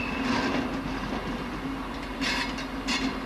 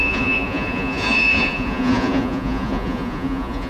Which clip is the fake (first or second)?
second